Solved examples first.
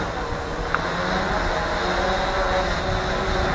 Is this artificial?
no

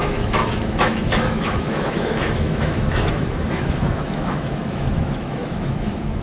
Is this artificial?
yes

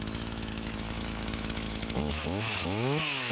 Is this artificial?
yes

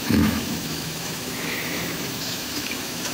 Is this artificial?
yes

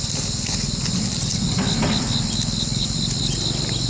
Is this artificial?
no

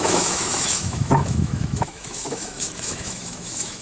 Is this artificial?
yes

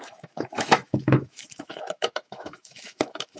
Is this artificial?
yes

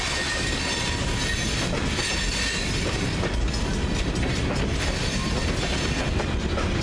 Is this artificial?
no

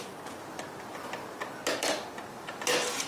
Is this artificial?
no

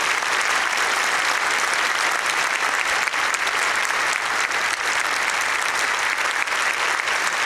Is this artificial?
no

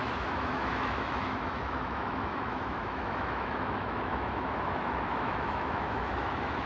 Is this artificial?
yes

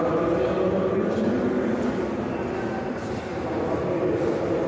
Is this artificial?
no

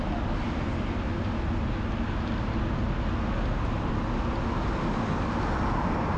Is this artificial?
no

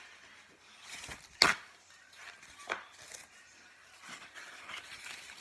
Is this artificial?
no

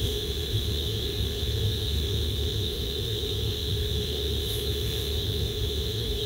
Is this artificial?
yes